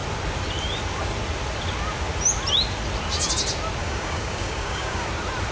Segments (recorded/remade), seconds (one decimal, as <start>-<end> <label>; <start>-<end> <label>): 0.0-3.8 recorded; 3.8-5.1 remade; 5.1-5.5 recorded